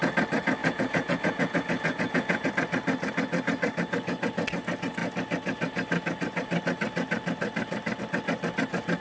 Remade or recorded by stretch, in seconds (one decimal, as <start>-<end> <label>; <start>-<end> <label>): 0.0-0.6 recorded; 0.6-2.5 remade; 2.5-9.0 recorded